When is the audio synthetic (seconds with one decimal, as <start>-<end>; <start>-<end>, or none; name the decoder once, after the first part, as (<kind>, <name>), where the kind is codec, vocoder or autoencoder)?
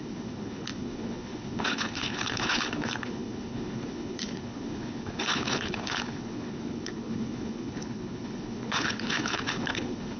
0.0-10.2 (codec, HILCodec)